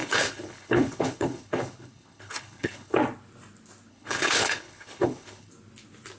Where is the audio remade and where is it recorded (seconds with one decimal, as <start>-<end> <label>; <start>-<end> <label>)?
0.0-3.0 remade; 3.0-3.9 recorded; 3.9-5.5 remade; 5.5-6.2 recorded